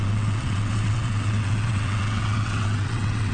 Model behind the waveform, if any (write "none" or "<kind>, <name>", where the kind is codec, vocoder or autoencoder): vocoder, WaveNeXt